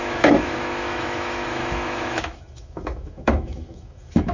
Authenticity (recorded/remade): remade